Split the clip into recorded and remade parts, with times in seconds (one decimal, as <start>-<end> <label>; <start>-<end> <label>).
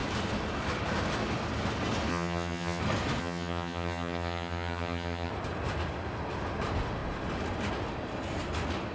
0.0-2.1 recorded; 2.1-2.8 remade; 2.8-3.2 recorded; 3.2-5.3 remade; 5.3-8.9 recorded